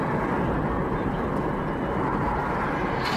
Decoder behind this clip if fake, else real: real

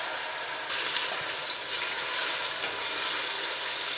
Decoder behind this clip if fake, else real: real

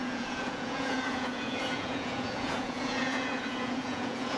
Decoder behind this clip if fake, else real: fake, vocoder, Vocos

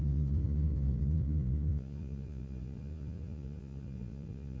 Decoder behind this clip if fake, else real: fake, vocoder, Vocos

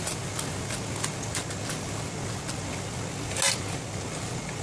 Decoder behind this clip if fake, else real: real